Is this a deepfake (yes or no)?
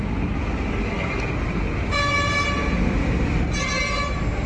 no